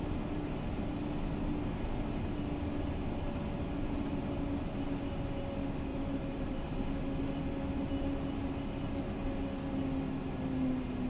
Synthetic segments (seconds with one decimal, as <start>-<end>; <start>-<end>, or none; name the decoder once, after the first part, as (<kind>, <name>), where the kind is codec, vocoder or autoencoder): 5.9-6.8 (vocoder, BigVGAN v2)

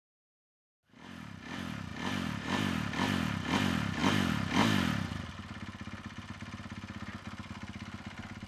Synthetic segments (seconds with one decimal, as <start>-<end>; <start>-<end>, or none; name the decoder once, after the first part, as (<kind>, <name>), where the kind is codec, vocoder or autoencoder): none

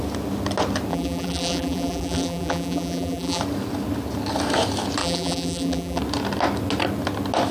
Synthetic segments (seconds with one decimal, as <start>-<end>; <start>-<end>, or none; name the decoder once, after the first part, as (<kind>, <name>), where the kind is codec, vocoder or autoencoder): 0.9-3.4 (vocoder, BigVGAN v2); 5.0-6.0

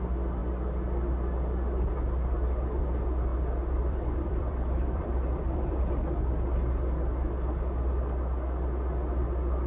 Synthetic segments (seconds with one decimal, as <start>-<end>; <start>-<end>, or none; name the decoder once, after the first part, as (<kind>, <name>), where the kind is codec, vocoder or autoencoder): 3.3-5.9 (vocoder, BigVGAN v2)

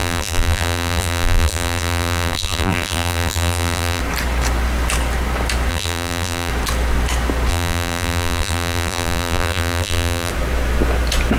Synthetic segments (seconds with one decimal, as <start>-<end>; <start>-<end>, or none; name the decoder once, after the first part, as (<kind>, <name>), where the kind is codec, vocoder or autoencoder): 0.0-4.0 (vocoder, BigVGAN v2); 5.7-6.5; 7.5-10.3

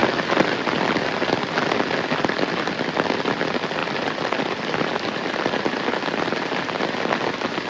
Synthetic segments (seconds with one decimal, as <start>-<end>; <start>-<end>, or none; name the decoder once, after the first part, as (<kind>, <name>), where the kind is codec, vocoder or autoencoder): 3.8-5.4 (vocoder, BigVGAN v2)